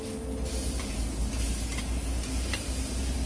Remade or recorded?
recorded